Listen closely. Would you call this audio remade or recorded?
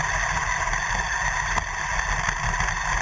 recorded